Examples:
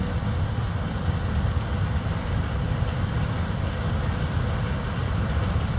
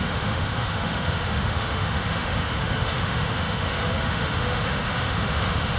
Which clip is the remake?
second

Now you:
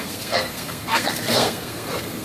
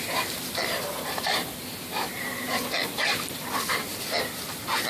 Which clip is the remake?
first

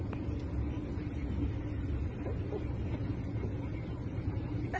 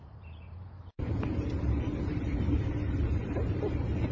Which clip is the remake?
second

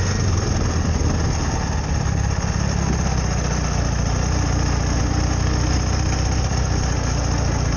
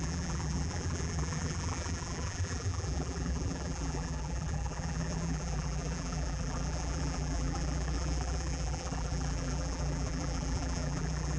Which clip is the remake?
second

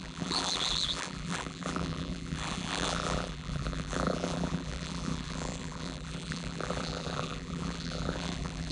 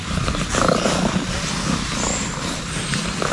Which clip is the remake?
first